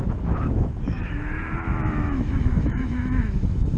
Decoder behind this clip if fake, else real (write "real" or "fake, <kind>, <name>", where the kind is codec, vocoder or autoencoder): fake, autoencoder, DAC-VAE